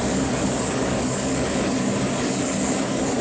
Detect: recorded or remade remade